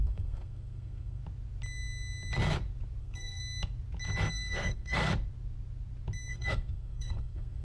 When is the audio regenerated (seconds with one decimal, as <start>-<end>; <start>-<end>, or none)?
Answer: 0.0-1.2; 3.0-3.4; 4.3-5.0; 6.3-7.6